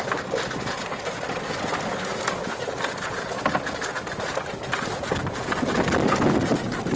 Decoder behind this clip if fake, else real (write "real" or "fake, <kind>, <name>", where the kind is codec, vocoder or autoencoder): real